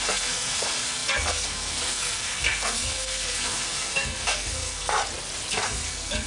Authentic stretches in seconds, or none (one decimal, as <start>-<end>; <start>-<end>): 5.0-5.5